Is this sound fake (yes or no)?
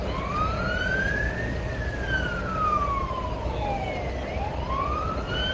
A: no